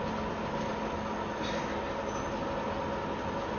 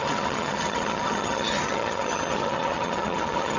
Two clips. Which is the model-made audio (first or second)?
second